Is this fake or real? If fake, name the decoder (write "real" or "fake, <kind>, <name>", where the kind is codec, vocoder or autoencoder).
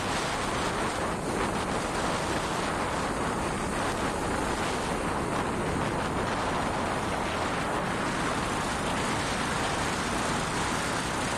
real